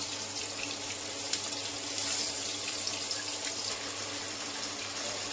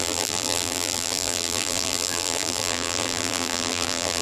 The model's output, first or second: second